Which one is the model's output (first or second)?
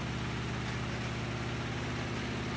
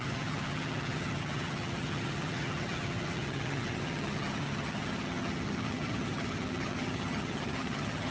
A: second